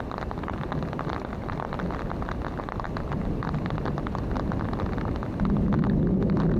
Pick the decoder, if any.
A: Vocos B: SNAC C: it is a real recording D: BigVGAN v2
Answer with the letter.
C